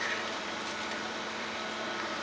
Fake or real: fake